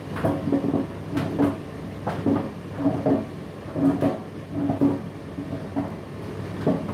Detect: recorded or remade recorded